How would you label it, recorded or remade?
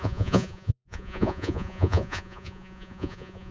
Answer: remade